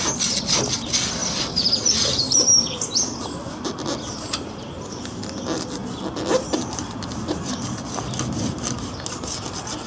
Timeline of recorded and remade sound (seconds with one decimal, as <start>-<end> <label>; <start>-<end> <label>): 0.0-9.9 recorded